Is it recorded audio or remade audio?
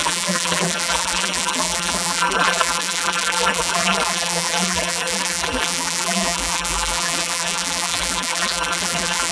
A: remade